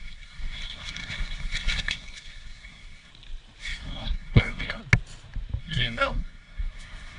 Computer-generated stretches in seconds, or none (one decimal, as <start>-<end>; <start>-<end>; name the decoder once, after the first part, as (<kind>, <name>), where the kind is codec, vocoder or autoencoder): 0.0-3.1 (codec, SNAC); 3.6-4.8; 5.6-7.2